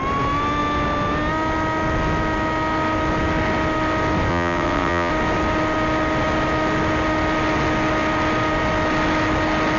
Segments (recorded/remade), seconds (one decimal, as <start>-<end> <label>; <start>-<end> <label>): 0.0-4.3 recorded; 4.3-5.1 remade; 5.1-9.8 recorded